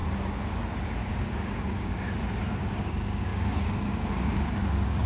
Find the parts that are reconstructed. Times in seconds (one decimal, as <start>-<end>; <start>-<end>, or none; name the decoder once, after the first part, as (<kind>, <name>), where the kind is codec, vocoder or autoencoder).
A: 1.1-1.9 (codec, DAC); 2.5-5.1